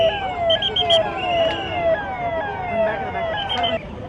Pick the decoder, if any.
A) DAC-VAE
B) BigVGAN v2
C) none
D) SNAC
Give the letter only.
C